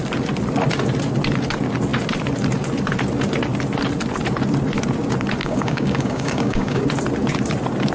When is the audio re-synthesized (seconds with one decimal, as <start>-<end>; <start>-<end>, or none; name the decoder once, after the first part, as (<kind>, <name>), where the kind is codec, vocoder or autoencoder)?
5.4-6.8 (codec, DAC)